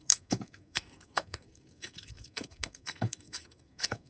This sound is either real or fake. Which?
fake